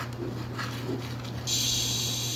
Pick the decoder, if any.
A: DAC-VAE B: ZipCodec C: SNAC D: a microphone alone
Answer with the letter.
D